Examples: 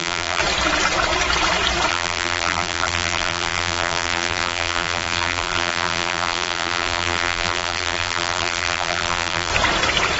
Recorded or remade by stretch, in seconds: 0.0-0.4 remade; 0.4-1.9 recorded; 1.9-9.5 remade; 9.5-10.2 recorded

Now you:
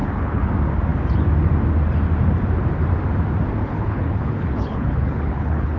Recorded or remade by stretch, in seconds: 0.0-0.5 remade; 0.5-3.6 recorded; 3.6-5.8 remade

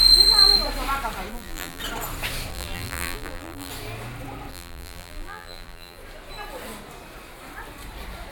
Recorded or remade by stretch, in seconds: 0.0-1.3 recorded; 1.3-1.8 remade; 1.8-2.5 recorded; 2.5-3.7 remade; 3.7-4.5 recorded; 4.5-6.0 remade; 6.0-8.3 recorded

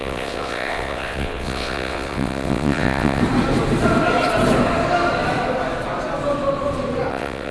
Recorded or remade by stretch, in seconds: 0.0-3.2 remade; 3.2-7.1 recorded; 7.1-7.5 remade

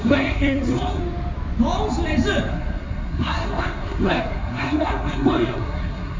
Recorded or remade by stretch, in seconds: 0.0-1.0 remade; 1.0-2.5 recorded; 2.5-6.2 remade

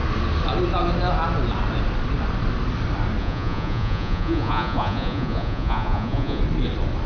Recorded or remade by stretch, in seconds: 0.0-3.2 recorded; 3.2-6.4 remade; 6.4-7.1 recorded

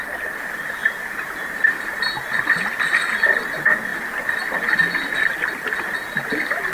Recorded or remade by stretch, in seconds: 0.0-6.7 recorded

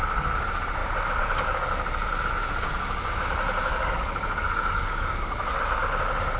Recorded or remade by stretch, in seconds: 0.0-3.7 recorded; 3.7-5.6 remade; 5.6-6.4 recorded